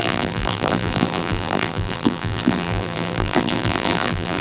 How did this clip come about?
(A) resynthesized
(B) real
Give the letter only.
A